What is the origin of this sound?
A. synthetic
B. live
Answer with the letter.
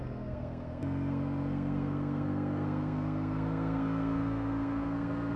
A